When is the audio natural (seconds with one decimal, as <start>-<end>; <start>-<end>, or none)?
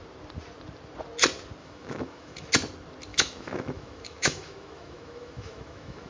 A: 0.0-1.6; 2.5-3.1